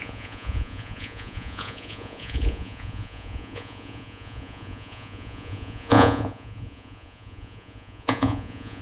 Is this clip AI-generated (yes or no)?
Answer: yes